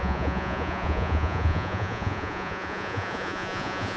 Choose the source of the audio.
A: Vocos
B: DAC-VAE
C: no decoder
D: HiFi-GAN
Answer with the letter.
A